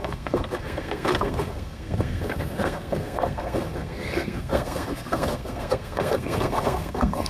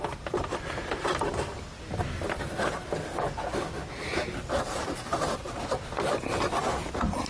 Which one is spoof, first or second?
first